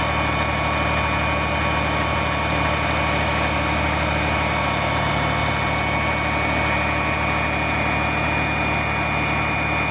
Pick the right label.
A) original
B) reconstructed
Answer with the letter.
A